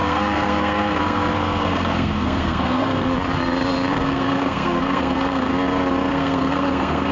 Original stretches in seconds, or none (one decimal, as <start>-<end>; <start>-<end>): 3.1-3.9; 5.5-6.1